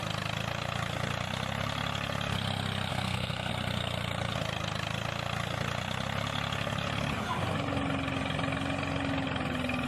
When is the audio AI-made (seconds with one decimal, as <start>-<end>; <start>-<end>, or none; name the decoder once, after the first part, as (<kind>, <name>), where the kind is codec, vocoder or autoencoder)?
2.9-3.5 (codec, SNAC)